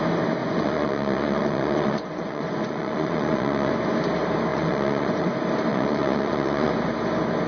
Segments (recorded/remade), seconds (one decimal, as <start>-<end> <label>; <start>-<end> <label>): 0.0-0.4 recorded; 0.4-3.7 remade; 3.7-4.5 recorded; 4.5-5.3 remade; 5.3-5.7 recorded; 5.7-6.7 remade; 6.7-7.5 recorded